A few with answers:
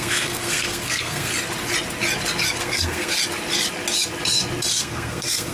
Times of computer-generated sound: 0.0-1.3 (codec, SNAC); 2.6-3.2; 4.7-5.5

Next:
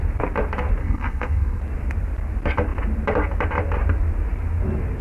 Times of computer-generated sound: 0.8-1.6 (codec, SNAC)

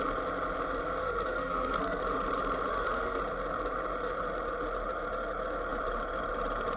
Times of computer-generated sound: 1.0-2.0 (codec, SNAC); 2.7-3.2

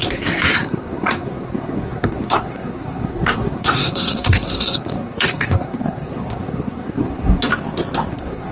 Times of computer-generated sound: 0.0-7.5 (codec, SNAC); 8.1-8.5

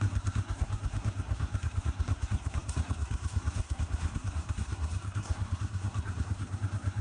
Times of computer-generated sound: 0.0-7.0 (codec, SNAC)

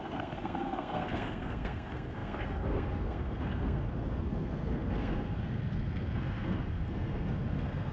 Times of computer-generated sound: 0.0-7.9 (codec, SNAC)